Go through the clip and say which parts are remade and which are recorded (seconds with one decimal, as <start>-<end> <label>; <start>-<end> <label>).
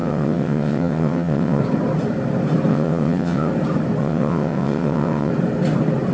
0.0-1.6 remade; 1.6-2.7 recorded; 2.7-3.5 remade; 3.5-4.0 recorded; 4.0-5.3 remade; 5.3-6.1 recorded